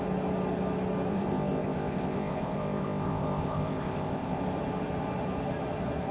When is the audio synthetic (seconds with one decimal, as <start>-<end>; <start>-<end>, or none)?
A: 1.1-4.4